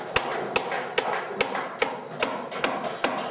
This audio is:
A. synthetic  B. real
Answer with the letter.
B